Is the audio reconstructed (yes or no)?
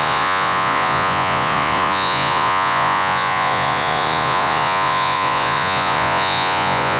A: yes